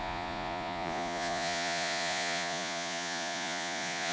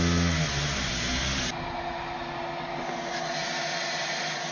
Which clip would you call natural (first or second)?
second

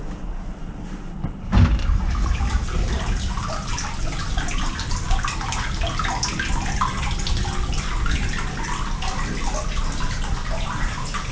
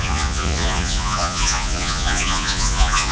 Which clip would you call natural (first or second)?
first